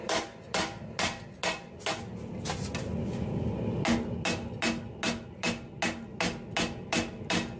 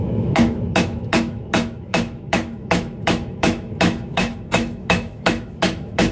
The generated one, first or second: second